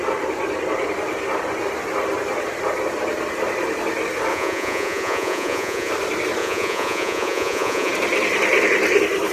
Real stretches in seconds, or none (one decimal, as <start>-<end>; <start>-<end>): 0.0-4.3; 5.9-6.4; 7.9-9.3